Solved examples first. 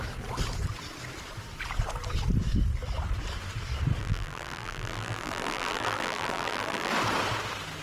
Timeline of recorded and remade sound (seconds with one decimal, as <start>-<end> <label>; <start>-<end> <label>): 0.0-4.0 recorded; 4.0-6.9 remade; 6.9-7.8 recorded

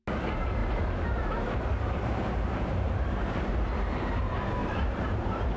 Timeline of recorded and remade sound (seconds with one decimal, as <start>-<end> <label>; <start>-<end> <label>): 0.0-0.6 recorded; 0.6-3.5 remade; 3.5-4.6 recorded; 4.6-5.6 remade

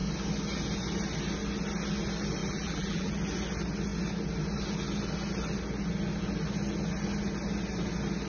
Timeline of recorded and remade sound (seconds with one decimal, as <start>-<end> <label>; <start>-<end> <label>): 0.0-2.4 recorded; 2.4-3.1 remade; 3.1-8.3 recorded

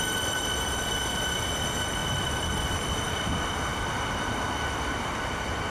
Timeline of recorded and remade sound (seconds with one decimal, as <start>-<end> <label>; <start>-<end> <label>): 0.0-2.0 recorded; 2.0-3.2 remade; 3.2-3.7 recorded; 3.7-5.7 remade

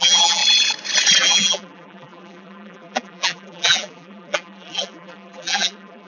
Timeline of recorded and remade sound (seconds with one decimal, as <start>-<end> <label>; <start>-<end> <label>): 0.0-0.4 remade; 0.4-1.2 recorded; 1.2-6.1 remade

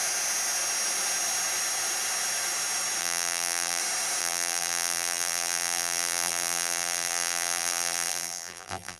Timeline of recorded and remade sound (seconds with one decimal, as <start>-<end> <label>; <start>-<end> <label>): 0.0-3.0 recorded; 3.0-3.8 remade; 3.8-4.2 recorded; 4.2-9.0 remade

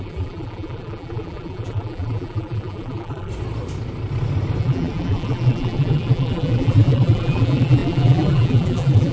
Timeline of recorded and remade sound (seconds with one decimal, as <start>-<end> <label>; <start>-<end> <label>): 0.0-3.3 remade; 3.3-4.6 recorded; 4.6-9.1 remade

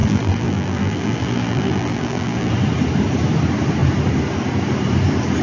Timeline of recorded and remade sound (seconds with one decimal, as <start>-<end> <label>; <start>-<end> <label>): 0.0-2.5 remade; 2.5-5.4 recorded